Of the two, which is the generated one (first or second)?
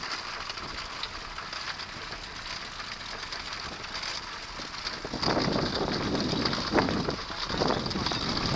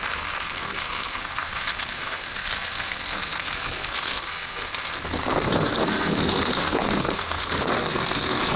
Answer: second